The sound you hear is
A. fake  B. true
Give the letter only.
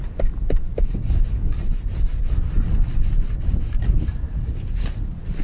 B